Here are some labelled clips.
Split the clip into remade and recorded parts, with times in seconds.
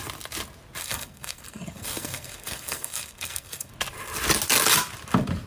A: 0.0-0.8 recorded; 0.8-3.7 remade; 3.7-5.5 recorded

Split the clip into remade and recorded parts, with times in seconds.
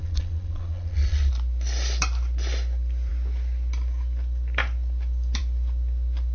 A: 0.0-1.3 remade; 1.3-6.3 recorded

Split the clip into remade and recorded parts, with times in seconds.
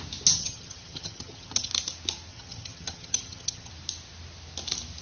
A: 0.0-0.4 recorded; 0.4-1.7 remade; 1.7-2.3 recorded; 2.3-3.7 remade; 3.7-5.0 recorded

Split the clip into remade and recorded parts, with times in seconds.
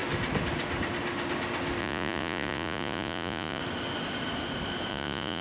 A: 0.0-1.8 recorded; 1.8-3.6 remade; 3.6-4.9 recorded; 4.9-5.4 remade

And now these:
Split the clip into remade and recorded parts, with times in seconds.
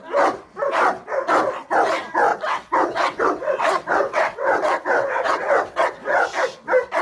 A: 0.0-2.3 recorded; 2.3-6.2 remade; 6.2-7.0 recorded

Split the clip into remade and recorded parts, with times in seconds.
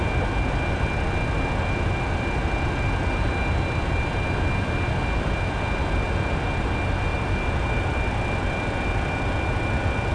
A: 0.0-10.1 recorded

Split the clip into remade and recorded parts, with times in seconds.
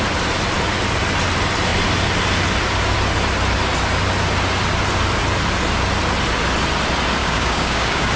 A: 0.0-7.2 recorded; 7.2-8.2 remade